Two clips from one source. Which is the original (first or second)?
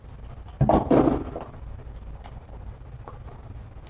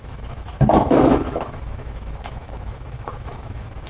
first